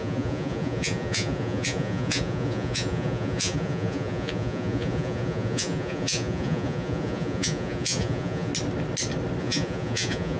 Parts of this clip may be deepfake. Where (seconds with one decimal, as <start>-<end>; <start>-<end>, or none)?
0.0-8.5; 9.4-10.4